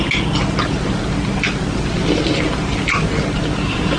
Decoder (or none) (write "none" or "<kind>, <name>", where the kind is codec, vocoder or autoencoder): none